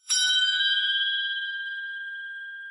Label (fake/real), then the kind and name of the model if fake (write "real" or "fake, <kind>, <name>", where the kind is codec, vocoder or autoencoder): fake, autoencoder, DAC-VAE